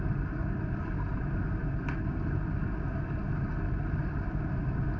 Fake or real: real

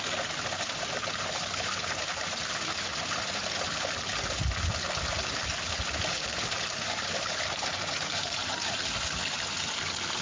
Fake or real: real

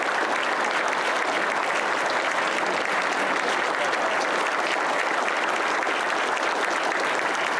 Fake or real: real